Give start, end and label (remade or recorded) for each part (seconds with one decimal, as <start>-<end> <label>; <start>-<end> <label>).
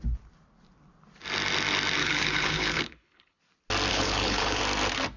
0.0-2.0 recorded; 2.0-3.4 remade; 3.4-3.9 recorded; 3.9-4.6 remade; 4.6-5.2 recorded